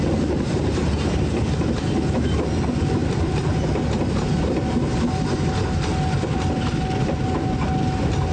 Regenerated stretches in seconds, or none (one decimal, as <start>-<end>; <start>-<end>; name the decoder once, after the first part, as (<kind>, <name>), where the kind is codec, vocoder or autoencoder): none